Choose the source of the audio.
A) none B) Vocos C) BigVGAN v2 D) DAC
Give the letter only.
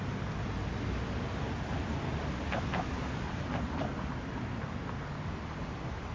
A